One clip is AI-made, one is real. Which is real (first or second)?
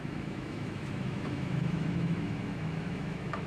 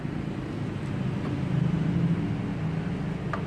second